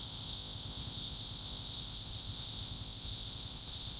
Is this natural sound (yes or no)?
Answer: no